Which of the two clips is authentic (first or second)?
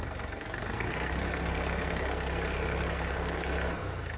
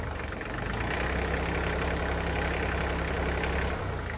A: second